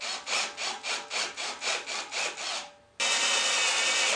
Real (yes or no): yes